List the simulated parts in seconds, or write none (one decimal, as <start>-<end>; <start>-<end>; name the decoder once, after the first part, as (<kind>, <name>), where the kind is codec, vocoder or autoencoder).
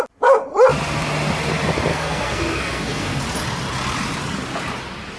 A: 1.9-3.2 (codec, SNAC)